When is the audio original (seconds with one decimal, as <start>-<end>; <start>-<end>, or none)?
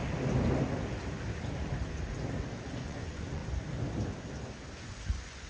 0.0-2.7; 3.4-4.8